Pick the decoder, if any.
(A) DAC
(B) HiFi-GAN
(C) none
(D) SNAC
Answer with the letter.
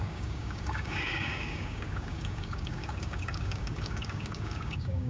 A